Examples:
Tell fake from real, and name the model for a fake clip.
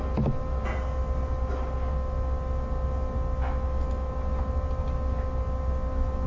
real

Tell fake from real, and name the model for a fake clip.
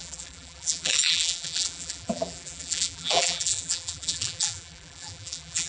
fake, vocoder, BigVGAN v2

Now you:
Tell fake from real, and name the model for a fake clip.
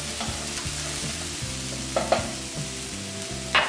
real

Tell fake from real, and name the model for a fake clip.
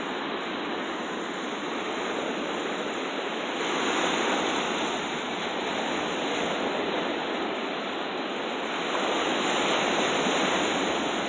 real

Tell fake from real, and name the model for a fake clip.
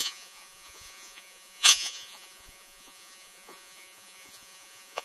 fake, vocoder, Vocos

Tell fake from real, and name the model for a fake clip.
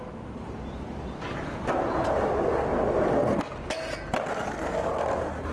real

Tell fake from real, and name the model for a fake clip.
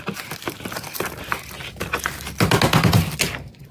real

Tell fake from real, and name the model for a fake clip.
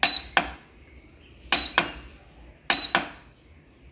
real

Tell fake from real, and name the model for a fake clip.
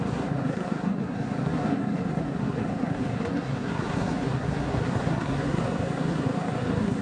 fake, codec, SNAC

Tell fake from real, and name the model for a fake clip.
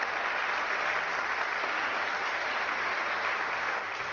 real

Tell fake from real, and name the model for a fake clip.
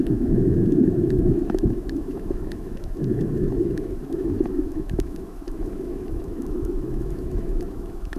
fake, autoencoder, DAC-VAE